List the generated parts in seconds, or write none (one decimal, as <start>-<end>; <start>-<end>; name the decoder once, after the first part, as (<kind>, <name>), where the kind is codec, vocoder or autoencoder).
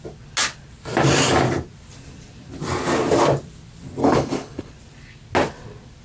4.0-4.7 (codec, HILCodec)